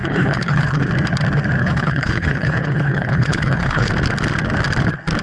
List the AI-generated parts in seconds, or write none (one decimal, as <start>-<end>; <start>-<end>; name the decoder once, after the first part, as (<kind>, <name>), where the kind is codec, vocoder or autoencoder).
0.0-0.9 (codec, HILCodec); 1.6-3.9